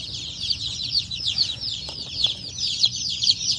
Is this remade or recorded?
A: remade